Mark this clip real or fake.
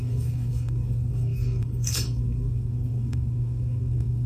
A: fake